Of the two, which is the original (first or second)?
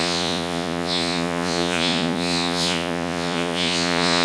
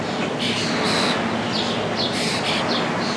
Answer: second